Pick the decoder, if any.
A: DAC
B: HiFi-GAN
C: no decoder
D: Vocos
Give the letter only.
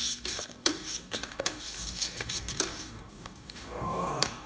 A